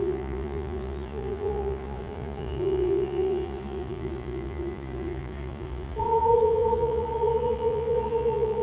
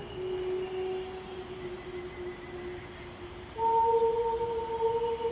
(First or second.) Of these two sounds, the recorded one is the second